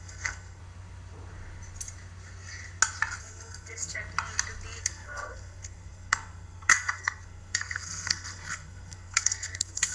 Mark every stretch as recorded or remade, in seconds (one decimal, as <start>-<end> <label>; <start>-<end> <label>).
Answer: 0.0-0.6 remade; 0.6-3.2 recorded; 3.2-4.0 remade; 4.0-4.8 recorded; 4.8-9.9 remade